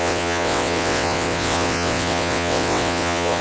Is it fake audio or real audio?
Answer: fake